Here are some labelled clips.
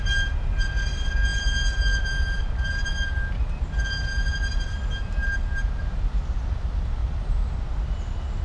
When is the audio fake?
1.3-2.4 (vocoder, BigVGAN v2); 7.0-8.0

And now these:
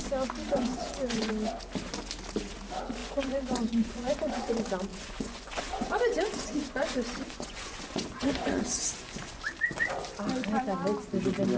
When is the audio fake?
0.5-1.3 (vocoder, Vocos); 3.0-4.5; 4.9-9.4

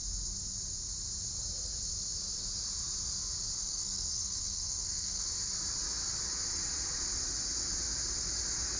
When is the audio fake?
3.6-5.2 (codec, SNAC)

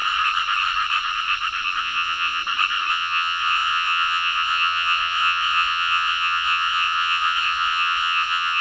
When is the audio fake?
1.8-2.4 (vocoder, Vocos); 2.9-8.6

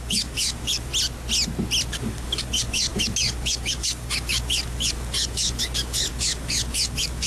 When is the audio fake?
0.0-0.9 (codec, DAC); 1.9-7.3

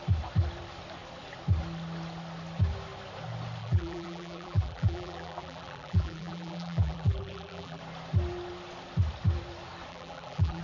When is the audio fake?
3.6-7.8 (vocoder, BigVGAN v2); 9.9-10.6

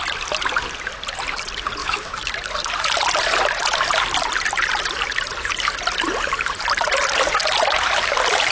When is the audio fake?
1.8-2.3 (autoencoder, DAC-VAE)

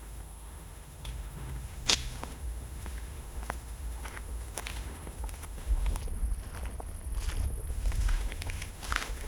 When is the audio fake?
0.0-6.0 (autoencoder, DAC-VAE); 7.7-9.3